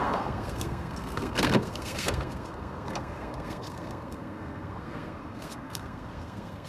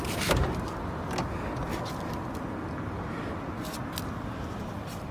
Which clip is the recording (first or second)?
second